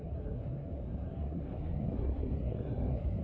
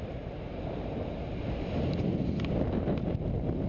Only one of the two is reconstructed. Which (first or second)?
first